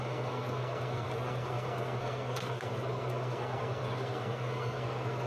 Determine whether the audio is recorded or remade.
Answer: remade